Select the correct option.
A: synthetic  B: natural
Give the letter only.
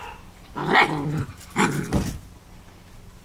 B